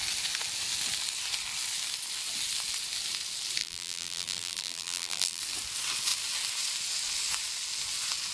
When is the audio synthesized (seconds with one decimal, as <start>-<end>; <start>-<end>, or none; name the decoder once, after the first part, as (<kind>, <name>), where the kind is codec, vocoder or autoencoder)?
3.6-5.4 (vocoder, BigVGAN v2)